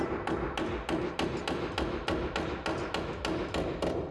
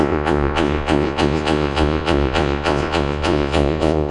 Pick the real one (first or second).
first